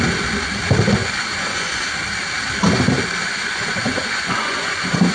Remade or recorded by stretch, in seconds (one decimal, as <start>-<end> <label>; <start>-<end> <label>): 0.0-1.0 recorded; 1.0-1.8 remade; 1.8-3.2 recorded; 3.2-5.1 remade